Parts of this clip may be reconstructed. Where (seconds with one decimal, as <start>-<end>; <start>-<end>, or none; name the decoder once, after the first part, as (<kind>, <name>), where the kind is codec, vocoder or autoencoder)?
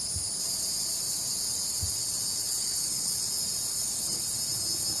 2.4-3.1 (codec, HILCodec); 3.7-4.2